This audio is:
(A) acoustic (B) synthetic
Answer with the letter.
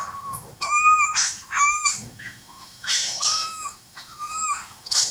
B